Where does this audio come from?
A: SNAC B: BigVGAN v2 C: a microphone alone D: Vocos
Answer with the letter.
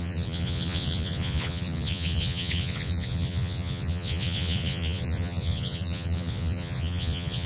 D